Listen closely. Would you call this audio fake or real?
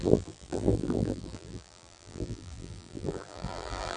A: fake